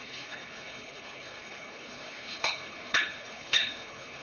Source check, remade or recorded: remade